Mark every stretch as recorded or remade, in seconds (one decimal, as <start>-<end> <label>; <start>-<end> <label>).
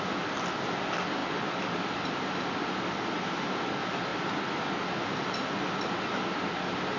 0.0-7.0 recorded